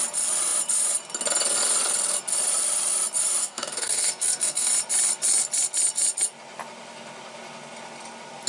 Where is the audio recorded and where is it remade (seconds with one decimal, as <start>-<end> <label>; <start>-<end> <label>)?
0.0-3.4 recorded; 3.4-4.7 remade; 4.7-8.5 recorded